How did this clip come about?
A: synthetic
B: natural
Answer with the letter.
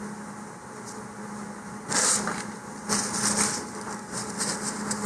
B